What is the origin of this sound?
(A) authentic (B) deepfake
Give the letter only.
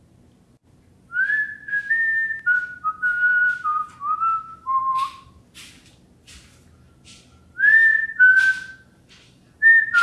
A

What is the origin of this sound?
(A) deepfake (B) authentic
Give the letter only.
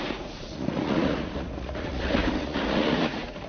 A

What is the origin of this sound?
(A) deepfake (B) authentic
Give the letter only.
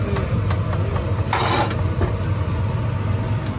B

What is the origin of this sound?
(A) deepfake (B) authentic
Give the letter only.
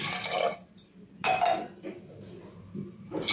B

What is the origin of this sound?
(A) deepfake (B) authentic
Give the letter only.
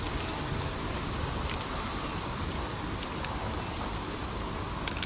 B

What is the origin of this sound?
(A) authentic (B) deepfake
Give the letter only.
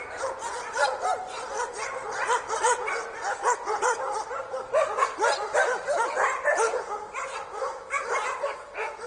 A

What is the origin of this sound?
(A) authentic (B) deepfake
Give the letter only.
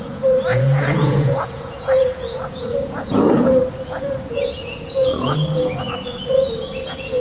B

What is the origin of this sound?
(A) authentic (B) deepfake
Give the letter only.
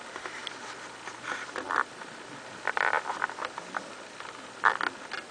A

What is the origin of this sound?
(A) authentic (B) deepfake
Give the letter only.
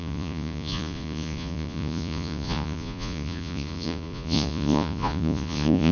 B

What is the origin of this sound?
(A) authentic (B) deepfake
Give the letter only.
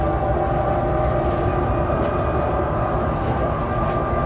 A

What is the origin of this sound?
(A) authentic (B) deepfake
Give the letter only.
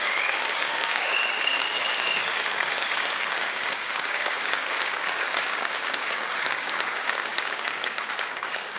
B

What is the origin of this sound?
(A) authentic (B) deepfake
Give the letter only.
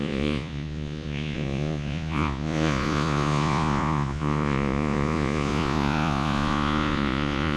B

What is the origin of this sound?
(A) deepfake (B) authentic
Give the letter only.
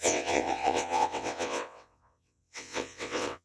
A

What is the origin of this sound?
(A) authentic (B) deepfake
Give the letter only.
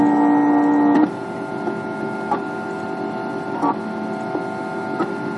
A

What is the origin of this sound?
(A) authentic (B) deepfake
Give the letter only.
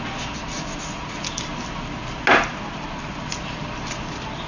A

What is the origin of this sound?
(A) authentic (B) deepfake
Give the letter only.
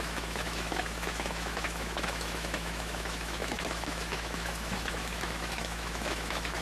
B